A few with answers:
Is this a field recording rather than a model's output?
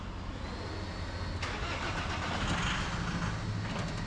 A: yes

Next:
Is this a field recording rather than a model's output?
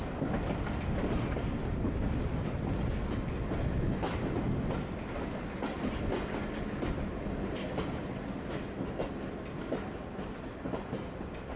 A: yes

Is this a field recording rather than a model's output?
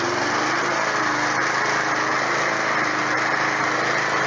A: yes